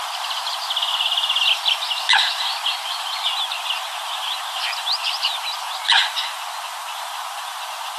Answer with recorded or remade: remade